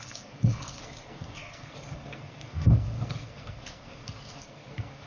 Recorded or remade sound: remade